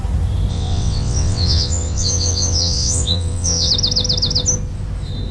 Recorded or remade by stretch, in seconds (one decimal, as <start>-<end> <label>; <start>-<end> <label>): 0.0-0.5 recorded; 0.5-3.7 remade; 3.7-5.3 recorded